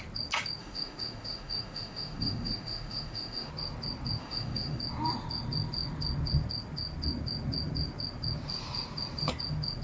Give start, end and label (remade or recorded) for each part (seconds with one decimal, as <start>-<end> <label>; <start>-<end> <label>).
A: 0.0-0.6 recorded; 0.6-3.5 remade; 3.5-4.2 recorded; 4.2-4.8 remade; 4.8-9.8 recorded